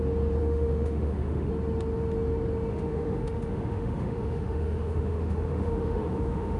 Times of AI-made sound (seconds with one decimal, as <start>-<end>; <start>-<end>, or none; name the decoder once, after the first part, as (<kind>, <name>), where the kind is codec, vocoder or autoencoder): 0.4-1.5 (autoencoder, DAC-VAE); 2.7-6.6